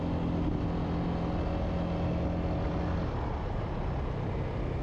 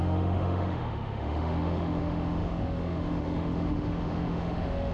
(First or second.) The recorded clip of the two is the first